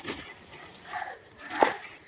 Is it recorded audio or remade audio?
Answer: remade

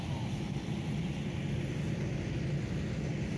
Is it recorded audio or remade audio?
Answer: remade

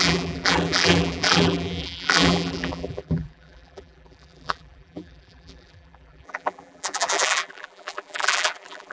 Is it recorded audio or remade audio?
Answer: remade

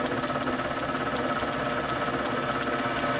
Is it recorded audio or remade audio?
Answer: recorded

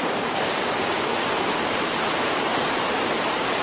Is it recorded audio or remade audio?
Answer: remade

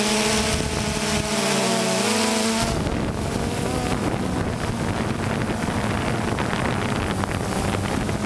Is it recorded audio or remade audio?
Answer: recorded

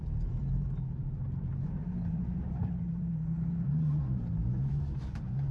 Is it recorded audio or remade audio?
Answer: remade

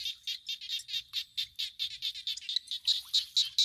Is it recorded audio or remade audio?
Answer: recorded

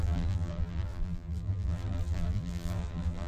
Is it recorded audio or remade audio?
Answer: remade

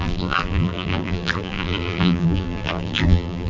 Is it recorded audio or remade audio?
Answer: remade